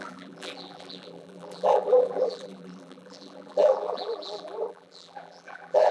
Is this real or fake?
fake